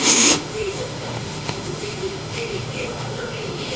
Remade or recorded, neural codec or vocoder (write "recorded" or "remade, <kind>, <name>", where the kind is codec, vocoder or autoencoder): remade, autoencoder, DAC-VAE